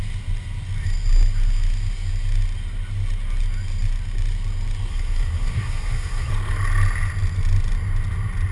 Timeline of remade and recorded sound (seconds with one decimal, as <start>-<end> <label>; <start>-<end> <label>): 0.0-4.9 recorded; 4.9-6.3 remade; 6.3-8.5 recorded